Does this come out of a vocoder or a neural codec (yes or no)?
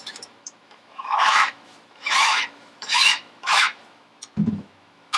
yes